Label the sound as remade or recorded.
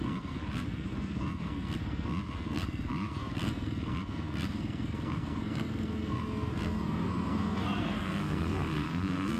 remade